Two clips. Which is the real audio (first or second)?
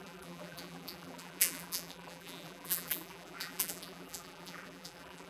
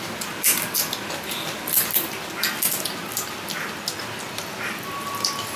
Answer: second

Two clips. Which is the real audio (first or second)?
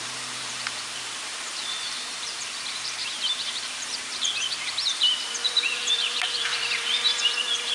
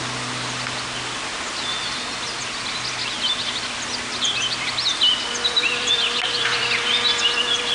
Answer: second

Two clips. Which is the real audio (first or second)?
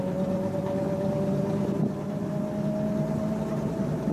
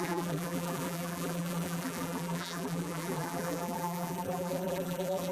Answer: first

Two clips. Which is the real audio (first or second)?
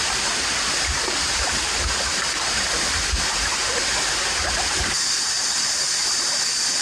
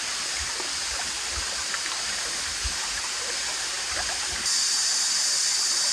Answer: second